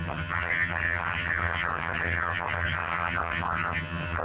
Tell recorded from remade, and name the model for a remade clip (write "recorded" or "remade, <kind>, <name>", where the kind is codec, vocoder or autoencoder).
remade, vocoder, HiFi-GAN